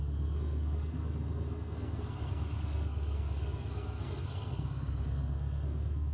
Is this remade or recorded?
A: remade